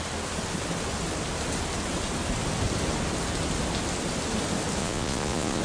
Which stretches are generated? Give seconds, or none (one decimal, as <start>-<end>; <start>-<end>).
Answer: 4.8-5.6

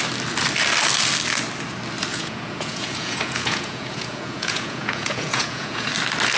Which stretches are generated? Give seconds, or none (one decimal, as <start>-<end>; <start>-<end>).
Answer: 2.1-5.9

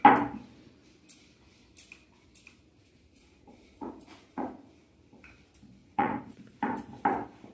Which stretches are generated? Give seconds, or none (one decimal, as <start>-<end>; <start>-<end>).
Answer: 2.8-4.7; 5.8-6.6

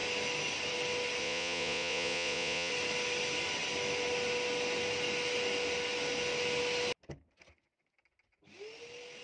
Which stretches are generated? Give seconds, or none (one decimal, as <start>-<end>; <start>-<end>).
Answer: 1.2-2.7